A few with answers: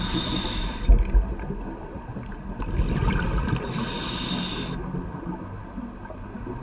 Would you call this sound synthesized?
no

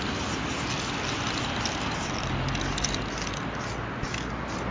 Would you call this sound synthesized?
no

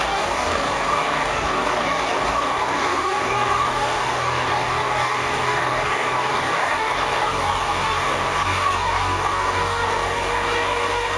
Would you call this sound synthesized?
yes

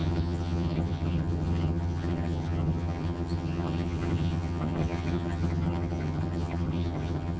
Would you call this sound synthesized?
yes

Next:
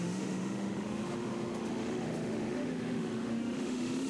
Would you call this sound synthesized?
yes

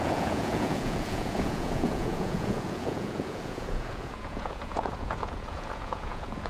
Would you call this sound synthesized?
yes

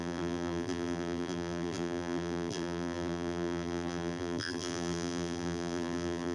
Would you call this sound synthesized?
yes